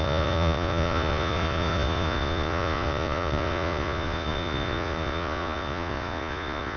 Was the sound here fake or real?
fake